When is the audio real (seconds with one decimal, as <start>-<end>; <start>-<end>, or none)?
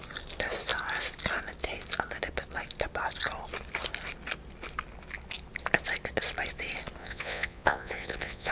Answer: 0.0-7.0